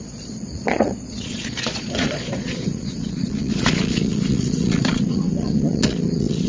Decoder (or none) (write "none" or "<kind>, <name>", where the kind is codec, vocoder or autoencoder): vocoder, Vocos